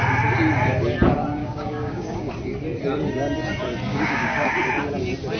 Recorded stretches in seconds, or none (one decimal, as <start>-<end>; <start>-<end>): 0.0-1.4; 2.3-3.9; 4.5-5.4